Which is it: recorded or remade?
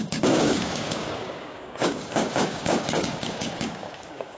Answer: remade